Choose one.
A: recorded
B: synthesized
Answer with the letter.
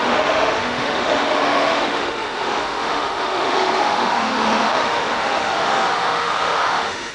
B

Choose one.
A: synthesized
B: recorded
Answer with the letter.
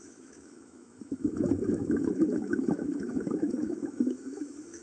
A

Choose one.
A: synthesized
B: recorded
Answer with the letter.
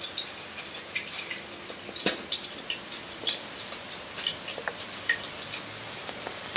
B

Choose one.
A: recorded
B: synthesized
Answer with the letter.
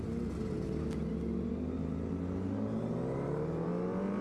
A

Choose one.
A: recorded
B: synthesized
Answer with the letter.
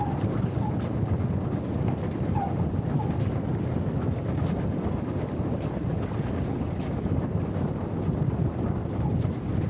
A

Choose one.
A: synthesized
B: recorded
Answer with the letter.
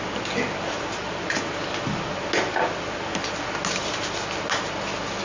B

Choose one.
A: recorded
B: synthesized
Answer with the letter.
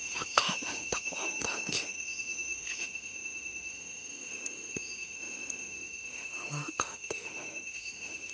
B